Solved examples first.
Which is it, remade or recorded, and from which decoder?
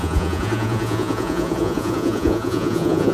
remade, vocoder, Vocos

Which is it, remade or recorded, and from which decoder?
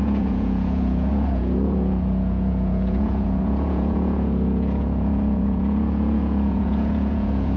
remade, vocoder, Vocos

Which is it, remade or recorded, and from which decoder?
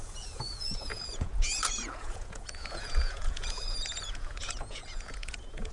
remade, vocoder, Vocos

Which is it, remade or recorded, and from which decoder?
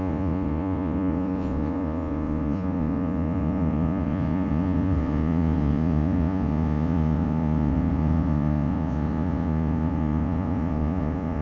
remade, vocoder, Vocos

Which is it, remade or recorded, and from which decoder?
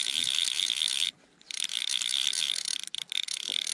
recorded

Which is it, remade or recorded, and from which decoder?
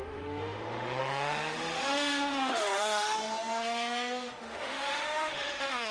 remade, autoencoder, DAC-VAE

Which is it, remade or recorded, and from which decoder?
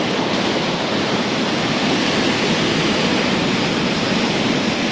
recorded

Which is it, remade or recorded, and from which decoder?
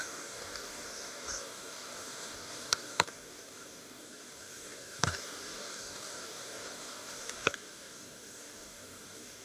remade, codec, DAC